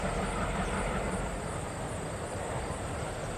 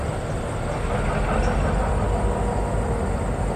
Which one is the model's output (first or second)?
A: first